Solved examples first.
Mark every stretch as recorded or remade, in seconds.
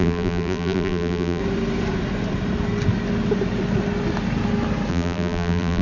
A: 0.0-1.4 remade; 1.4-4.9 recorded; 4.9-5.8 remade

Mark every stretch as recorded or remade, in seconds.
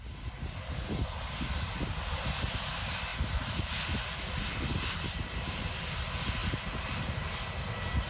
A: 0.0-6.4 recorded; 6.4-7.3 remade; 7.3-8.1 recorded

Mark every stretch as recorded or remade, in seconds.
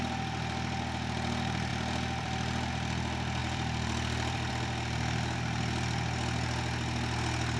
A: 0.0-1.7 recorded; 1.7-2.7 remade; 2.7-3.4 recorded; 3.4-4.5 remade; 4.5-7.6 recorded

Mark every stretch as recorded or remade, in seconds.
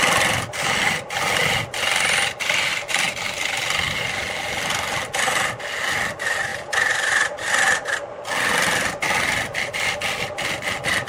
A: 0.0-6.5 recorded; 6.5-7.5 remade; 7.5-11.1 recorded